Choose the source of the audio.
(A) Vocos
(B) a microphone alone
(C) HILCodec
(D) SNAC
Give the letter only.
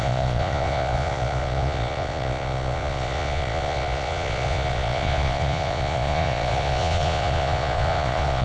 A